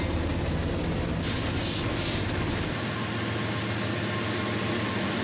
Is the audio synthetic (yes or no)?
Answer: no